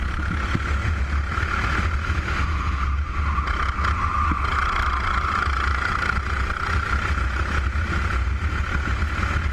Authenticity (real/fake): real